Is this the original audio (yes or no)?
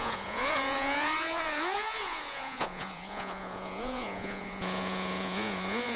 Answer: no